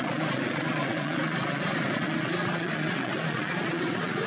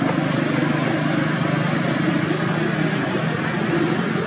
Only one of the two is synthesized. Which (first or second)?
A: first